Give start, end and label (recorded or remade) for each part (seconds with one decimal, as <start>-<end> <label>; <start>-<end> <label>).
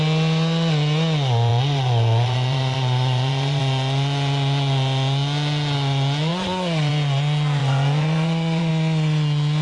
0.0-1.5 recorded; 1.5-3.6 remade; 3.6-6.3 recorded; 6.3-6.9 remade; 6.9-7.6 recorded; 7.6-8.7 remade; 8.7-9.6 recorded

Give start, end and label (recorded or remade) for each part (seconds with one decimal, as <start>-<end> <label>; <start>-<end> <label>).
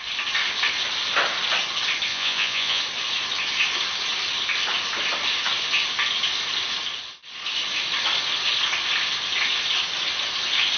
0.0-2.1 recorded; 2.1-2.8 remade; 2.8-10.8 recorded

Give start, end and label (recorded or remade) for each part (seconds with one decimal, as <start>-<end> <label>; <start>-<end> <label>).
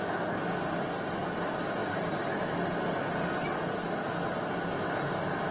0.0-5.5 recorded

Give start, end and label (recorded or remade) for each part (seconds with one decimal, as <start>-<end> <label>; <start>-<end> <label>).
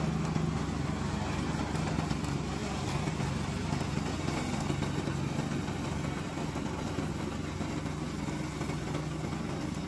0.0-9.9 recorded